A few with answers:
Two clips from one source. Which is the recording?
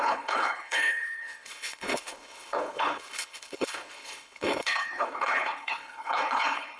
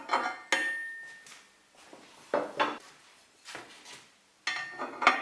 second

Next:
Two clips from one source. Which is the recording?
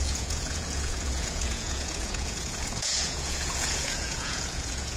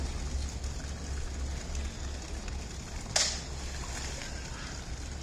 second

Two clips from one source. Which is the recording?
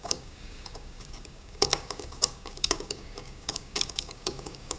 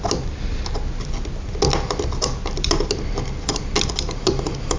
second